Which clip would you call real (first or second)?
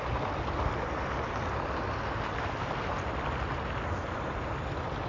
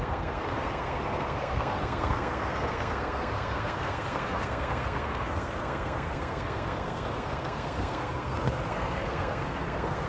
first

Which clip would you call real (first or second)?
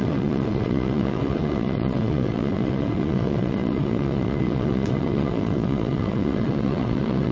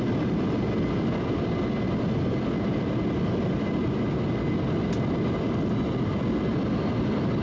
second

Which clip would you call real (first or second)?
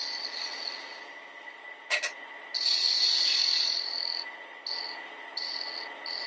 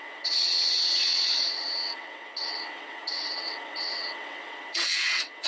first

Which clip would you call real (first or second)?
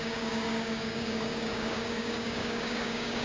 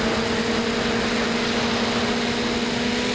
second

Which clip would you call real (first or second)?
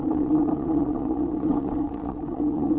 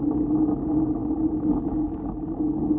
second